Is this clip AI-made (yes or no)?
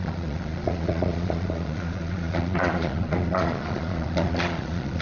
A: yes